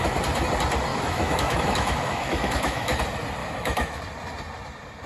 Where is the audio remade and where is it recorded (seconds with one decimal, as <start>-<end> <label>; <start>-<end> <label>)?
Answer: 0.0-0.9 recorded; 0.9-3.0 remade; 3.0-3.4 recorded; 3.4-4.0 remade; 4.0-5.1 recorded